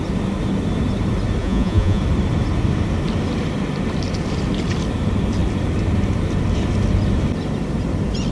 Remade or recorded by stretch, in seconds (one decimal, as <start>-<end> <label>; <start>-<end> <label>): 0.0-1.4 recorded; 1.4-2.0 remade; 2.0-8.3 recorded